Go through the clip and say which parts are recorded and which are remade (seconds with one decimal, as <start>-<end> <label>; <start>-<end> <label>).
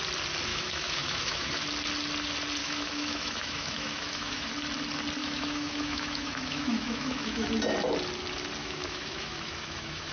0.0-0.5 recorded; 0.5-1.6 remade; 1.6-2.6 recorded; 2.6-4.5 remade; 4.5-5.2 recorded; 5.2-7.5 remade; 7.5-8.6 recorded; 8.6-10.1 remade